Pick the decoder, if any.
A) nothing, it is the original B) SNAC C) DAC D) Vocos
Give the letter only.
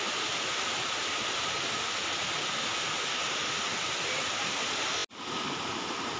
A